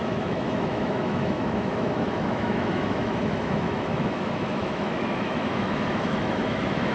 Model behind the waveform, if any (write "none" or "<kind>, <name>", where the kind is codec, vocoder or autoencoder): autoencoder, DAC-VAE